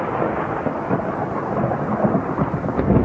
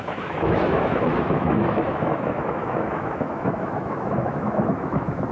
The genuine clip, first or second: first